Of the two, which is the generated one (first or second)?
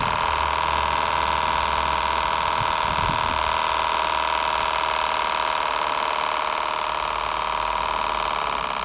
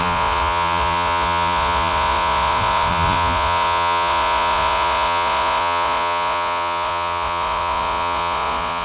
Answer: second